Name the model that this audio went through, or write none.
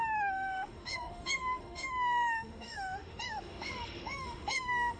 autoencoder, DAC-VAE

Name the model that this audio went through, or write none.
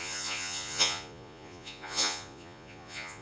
vocoder, Vocos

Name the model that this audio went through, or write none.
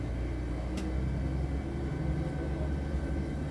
none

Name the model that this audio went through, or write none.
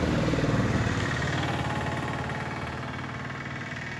none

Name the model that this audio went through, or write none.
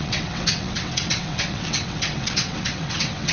vocoder, WaveNeXt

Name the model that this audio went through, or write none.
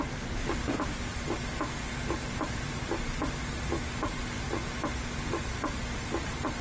none